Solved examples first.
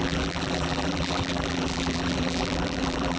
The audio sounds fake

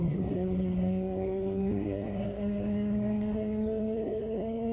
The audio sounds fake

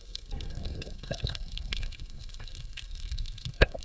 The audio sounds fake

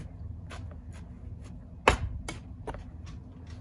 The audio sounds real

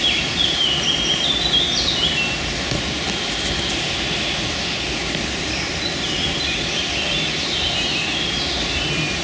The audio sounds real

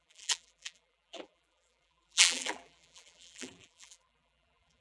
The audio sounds fake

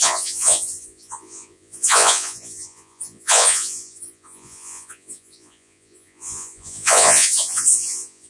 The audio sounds fake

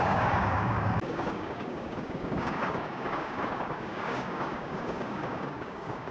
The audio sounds fake